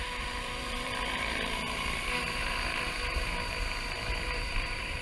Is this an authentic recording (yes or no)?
no